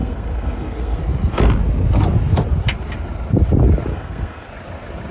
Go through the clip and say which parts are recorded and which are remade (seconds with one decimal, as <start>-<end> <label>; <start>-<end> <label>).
0.0-1.0 remade; 1.0-3.9 recorded; 3.9-4.5 remade; 4.5-5.1 recorded